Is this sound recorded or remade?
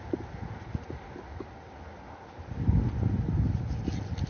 recorded